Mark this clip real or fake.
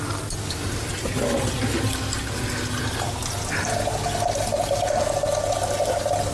real